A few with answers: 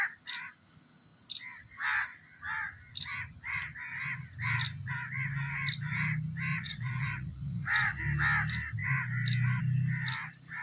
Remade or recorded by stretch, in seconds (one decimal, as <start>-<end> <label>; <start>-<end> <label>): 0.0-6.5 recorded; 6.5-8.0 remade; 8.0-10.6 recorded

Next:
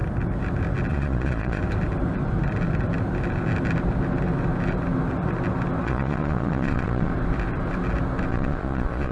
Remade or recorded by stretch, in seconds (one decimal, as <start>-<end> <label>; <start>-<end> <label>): 0.0-0.9 recorded; 0.9-1.6 remade; 1.6-5.8 recorded; 5.8-7.1 remade; 7.1-8.3 recorded; 8.3-9.1 remade

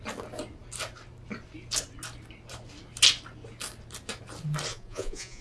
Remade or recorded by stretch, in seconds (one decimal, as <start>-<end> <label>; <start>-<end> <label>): 0.0-4.7 recorded; 4.7-5.4 remade